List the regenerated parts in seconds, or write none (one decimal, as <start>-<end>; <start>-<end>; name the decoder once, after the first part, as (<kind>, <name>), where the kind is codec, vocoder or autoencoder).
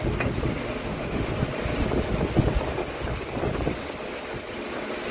0.8-1.3 (autoencoder, DAC-VAE)